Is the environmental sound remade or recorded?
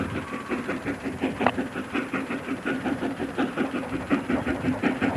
remade